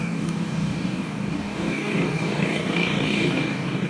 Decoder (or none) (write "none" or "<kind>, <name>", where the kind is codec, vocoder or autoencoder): codec, DAC